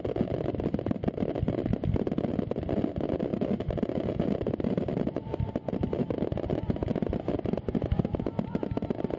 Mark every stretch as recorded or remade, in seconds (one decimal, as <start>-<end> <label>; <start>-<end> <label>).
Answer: 0.0-3.3 recorded; 3.3-5.5 remade; 5.5-9.2 recorded